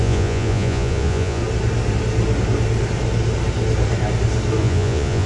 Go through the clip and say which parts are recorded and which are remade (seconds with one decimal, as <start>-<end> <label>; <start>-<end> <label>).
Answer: 0.0-1.4 remade; 1.4-4.6 recorded; 4.6-5.3 remade